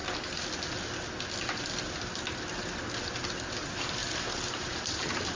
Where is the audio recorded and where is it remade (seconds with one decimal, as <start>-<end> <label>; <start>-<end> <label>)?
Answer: 0.0-3.2 recorded; 3.2-5.3 remade